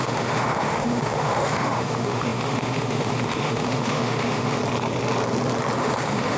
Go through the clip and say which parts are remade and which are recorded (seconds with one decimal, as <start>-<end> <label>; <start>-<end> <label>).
0.0-4.6 remade; 4.6-5.8 recorded; 5.8-6.4 remade